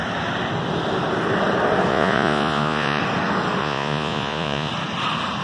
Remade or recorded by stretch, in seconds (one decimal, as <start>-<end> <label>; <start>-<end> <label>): 0.0-1.9 recorded; 1.9-3.0 remade; 3.0-3.6 recorded; 3.6-4.7 remade; 4.7-5.4 recorded